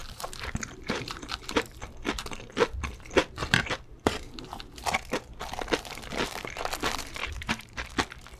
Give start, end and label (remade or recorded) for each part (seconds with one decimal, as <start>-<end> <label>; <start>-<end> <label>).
0.0-1.5 remade; 1.5-3.9 recorded; 3.9-4.6 remade; 4.6-7.2 recorded; 7.2-7.9 remade; 7.9-8.4 recorded